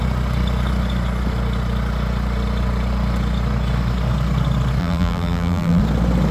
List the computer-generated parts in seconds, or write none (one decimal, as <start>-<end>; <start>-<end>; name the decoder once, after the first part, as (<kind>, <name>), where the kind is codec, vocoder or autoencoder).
4.8-5.8 (vocoder, BigVGAN v2)